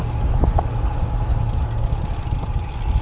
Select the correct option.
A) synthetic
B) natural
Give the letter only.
B